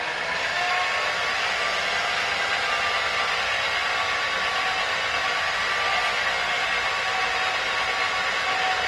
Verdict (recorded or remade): recorded